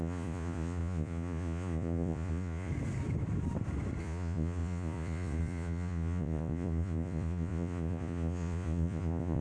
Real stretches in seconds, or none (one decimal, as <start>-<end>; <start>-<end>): 2.7-4.0